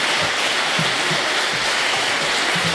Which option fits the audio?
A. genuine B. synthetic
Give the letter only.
A